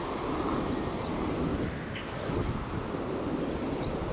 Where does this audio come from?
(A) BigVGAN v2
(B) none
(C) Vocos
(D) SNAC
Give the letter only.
B